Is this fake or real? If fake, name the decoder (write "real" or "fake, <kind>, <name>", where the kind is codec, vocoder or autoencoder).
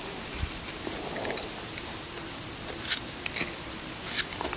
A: real